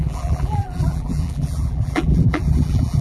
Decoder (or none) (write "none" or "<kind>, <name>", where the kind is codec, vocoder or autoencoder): vocoder, BigVGAN v2